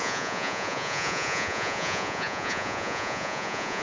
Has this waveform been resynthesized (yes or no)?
yes